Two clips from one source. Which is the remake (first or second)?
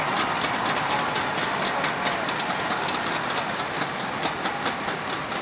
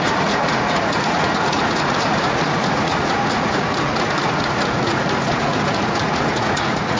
second